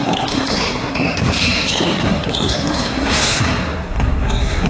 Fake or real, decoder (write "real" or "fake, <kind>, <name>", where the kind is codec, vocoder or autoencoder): fake, codec, SNAC